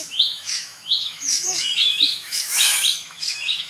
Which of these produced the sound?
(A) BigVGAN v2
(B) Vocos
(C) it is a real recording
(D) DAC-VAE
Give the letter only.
D